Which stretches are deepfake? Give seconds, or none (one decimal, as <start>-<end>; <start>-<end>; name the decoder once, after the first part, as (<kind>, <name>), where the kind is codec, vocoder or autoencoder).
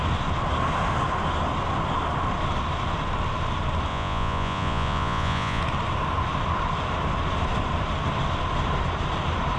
3.9-5.6 (vocoder, Vocos)